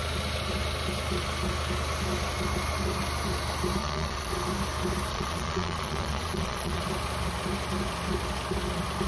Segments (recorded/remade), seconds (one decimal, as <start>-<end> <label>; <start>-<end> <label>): 0.0-3.8 recorded; 3.8-4.3 remade; 4.3-5.1 recorded; 5.1-6.8 remade; 6.8-9.1 recorded